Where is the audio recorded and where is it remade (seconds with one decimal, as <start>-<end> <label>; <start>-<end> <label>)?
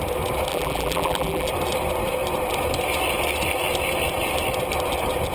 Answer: 0.0-0.5 recorded; 0.5-1.5 remade; 1.5-5.3 recorded